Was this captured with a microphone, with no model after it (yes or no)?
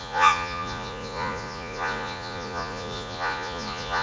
no